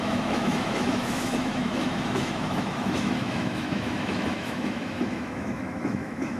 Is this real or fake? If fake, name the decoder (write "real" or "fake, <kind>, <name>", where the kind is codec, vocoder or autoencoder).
fake, autoencoder, DAC-VAE